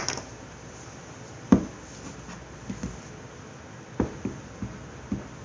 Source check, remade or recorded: recorded